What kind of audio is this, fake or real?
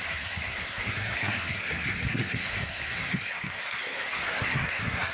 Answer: fake